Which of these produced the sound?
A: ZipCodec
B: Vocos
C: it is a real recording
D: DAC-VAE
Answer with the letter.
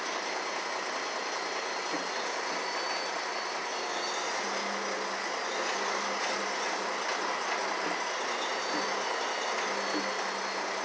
C